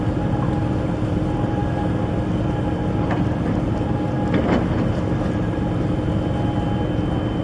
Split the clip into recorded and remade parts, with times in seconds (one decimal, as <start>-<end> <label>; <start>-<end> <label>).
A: 0.0-7.4 recorded